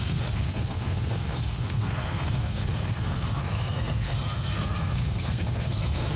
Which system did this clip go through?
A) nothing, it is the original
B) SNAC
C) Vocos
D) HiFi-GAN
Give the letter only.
B